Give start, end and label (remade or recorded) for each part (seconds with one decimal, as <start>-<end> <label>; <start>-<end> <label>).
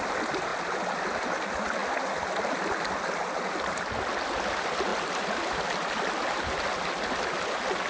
0.0-7.9 recorded